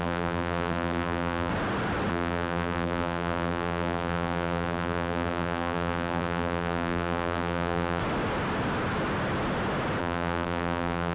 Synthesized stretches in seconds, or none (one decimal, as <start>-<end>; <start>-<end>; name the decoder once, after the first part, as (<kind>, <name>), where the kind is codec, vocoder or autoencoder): 0.0-1.5 (vocoder, BigVGAN v2); 2.1-8.0; 10.0-11.1